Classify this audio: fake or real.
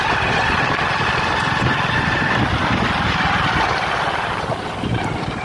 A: real